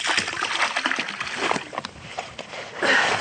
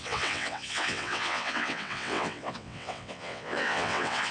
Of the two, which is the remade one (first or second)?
second